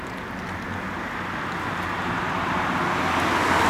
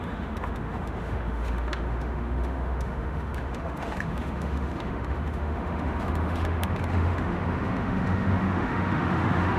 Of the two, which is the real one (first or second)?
first